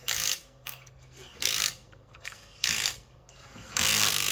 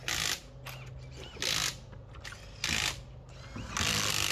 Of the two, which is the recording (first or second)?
second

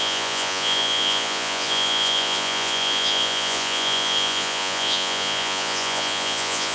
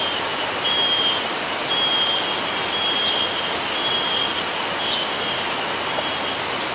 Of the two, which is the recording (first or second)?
second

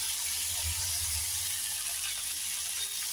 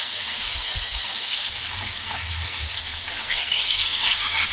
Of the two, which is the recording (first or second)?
first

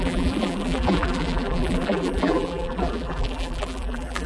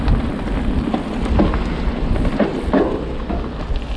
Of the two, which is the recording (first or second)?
second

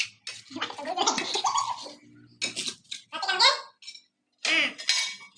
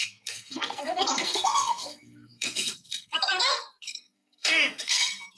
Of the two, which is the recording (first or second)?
first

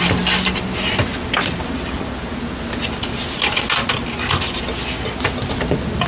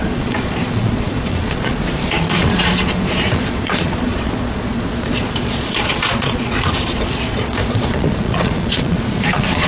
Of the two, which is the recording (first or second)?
first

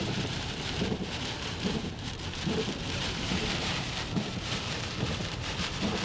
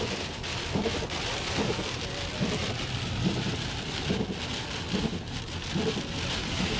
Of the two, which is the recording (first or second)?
second